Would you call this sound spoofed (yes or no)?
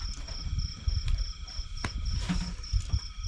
no